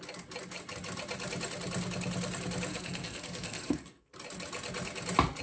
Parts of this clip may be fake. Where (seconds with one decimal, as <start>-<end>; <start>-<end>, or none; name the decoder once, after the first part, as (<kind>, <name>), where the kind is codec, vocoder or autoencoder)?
2.7-4.1 (codec, SNAC)